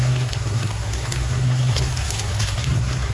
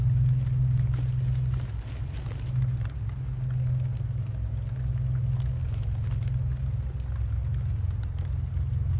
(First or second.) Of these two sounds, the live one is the second